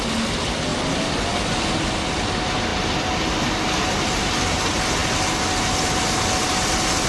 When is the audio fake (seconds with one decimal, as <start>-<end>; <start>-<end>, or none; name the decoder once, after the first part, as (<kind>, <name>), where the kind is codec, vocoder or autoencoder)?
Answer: none

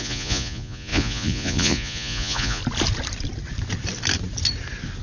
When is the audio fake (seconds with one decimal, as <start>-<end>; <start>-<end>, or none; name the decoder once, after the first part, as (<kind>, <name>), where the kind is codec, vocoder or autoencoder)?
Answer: 0.0-2.6 (vocoder, Vocos)

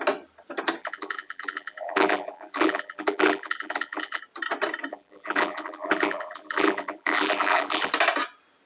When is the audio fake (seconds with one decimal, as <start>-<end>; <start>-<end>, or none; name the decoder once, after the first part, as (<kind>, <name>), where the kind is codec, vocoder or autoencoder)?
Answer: 0.8-4.2 (vocoder, BigVGAN v2); 4.9-7.9

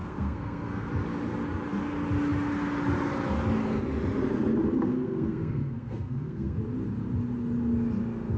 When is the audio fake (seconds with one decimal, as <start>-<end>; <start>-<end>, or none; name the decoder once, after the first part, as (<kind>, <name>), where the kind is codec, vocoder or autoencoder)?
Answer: 0.0-0.9 (codec, SNAC); 4.9-6.6

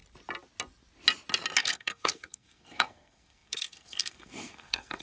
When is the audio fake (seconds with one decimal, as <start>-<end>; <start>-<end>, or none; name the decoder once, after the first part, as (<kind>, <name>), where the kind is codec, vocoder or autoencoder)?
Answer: 1.6-5.0 (codec, SNAC)

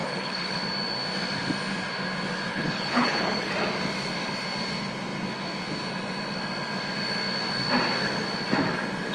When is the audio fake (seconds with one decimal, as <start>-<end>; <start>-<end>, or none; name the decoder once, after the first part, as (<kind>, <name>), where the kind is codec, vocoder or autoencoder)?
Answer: 0.0-0.6 (codec, HILCodec); 2.5-3.5

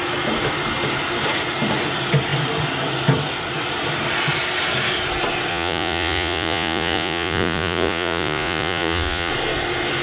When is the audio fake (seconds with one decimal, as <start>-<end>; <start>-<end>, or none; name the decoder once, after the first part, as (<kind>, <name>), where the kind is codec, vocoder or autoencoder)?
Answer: 5.5-9.3 (vocoder, Vocos)